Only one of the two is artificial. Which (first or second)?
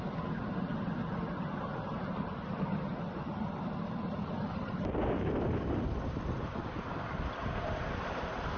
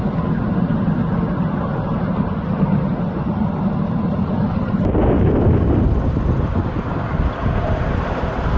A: first